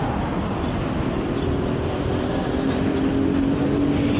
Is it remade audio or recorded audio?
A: recorded